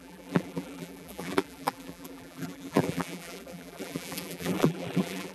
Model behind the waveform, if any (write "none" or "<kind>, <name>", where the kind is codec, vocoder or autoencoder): vocoder, BigVGAN v2